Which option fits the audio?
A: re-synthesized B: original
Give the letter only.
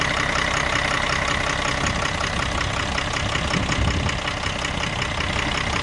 B